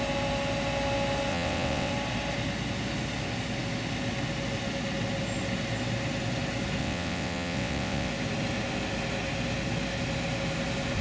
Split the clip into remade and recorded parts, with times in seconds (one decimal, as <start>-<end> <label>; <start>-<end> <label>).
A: 0.0-1.3 recorded; 1.3-1.9 remade; 1.9-6.8 recorded; 6.8-8.1 remade; 8.1-11.0 recorded